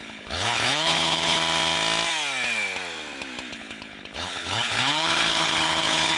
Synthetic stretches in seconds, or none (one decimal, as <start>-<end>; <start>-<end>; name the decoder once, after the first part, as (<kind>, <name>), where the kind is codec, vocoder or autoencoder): 0.0-1.4 (codec, HILCodec); 3.5-6.2